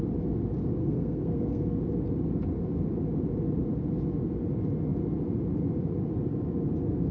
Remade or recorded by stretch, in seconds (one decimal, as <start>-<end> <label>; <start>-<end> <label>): 0.0-0.8 recorded; 0.8-1.8 remade; 1.8-7.1 recorded